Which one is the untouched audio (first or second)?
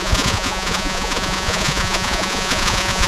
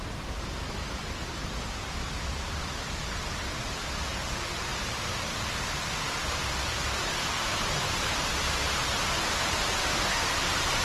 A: second